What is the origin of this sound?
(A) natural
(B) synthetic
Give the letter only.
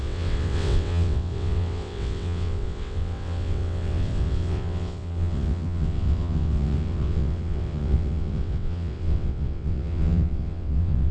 B